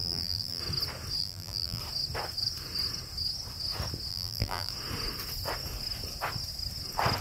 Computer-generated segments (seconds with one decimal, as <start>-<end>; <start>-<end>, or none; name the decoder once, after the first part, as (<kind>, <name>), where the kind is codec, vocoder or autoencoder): 0.0-0.6 (vocoder, BigVGAN v2); 1.2-1.8; 4.1-4.7